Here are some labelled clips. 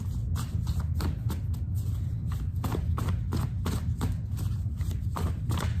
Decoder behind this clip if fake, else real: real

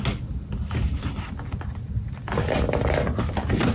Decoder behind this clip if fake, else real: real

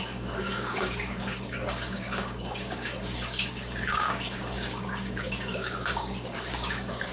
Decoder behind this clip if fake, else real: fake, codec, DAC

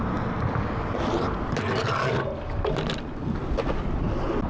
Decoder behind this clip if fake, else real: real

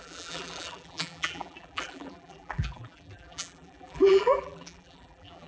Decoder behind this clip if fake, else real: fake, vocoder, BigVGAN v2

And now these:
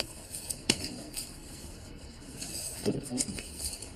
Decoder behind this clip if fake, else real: fake, codec, SNAC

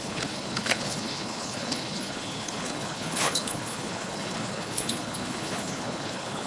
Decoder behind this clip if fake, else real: fake, codec, HILCodec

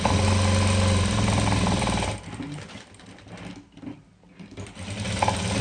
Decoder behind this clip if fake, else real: real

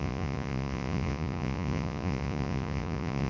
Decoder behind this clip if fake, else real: fake, vocoder, Vocos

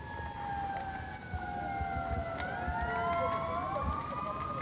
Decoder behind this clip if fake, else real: real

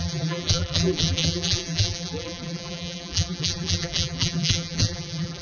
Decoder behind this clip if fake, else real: fake, vocoder, BigVGAN v2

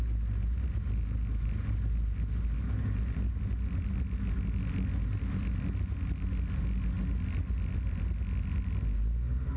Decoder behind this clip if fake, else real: real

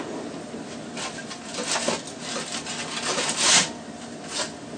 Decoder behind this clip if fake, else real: real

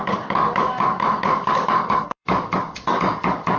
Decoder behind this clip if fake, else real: fake, codec, DAC